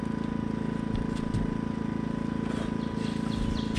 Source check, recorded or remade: recorded